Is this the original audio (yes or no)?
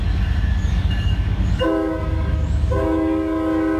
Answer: no